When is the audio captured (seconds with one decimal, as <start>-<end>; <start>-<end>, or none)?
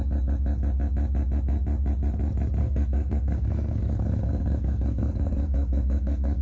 0.0-2.6